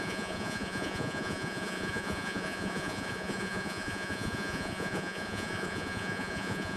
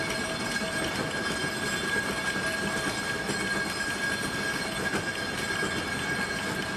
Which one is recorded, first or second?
second